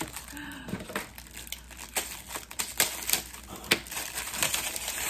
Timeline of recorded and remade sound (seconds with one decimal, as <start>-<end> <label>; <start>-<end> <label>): 0.0-1.1 remade; 1.1-4.2 recorded; 4.2-5.1 remade